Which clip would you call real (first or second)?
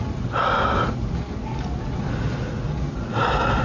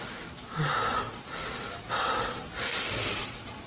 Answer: first